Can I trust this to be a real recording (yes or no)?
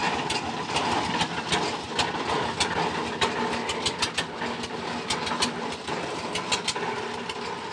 yes